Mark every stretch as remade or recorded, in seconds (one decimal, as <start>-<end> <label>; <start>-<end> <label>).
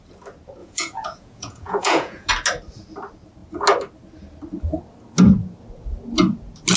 0.0-0.6 recorded; 0.6-2.3 remade; 2.3-6.8 recorded